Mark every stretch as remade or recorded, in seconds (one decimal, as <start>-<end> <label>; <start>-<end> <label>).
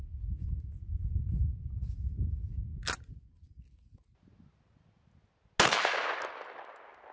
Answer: 0.0-7.1 recorded